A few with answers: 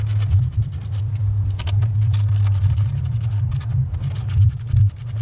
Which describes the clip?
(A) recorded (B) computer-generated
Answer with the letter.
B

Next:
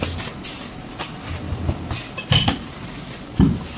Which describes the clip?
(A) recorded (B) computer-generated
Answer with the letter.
A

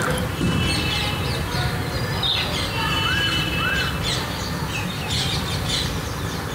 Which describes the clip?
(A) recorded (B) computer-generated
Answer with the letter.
A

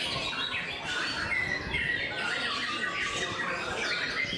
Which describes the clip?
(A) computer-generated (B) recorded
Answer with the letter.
B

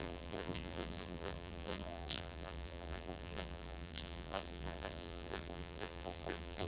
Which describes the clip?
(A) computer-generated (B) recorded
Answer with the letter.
A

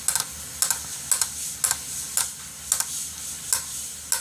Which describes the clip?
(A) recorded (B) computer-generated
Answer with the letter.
A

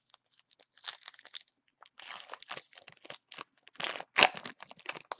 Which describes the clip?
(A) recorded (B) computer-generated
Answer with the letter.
A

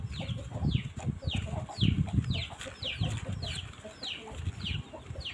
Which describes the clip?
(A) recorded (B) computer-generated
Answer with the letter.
A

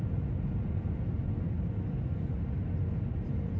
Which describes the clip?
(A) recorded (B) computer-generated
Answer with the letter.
A